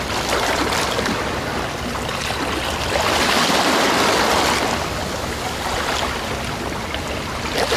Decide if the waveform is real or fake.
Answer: real